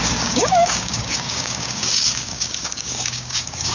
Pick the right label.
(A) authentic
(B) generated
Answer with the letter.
B